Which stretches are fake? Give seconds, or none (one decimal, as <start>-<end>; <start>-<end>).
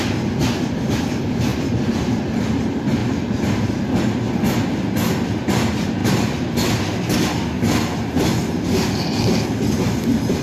none